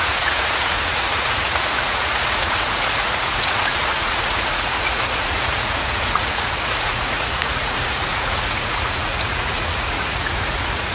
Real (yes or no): no